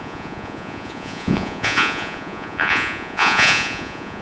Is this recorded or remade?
remade